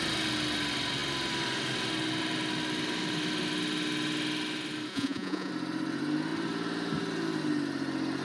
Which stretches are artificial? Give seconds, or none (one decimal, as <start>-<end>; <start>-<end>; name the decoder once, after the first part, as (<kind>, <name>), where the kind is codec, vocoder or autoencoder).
4.9-5.5 (vocoder, Vocos)